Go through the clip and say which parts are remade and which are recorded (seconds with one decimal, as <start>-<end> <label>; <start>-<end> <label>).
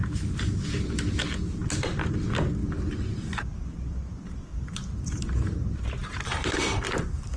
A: 0.0-0.6 remade; 0.6-4.5 recorded; 4.5-5.2 remade; 5.2-6.0 recorded; 6.0-7.4 remade